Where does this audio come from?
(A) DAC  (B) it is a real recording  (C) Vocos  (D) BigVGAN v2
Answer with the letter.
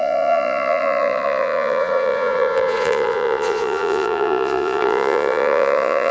C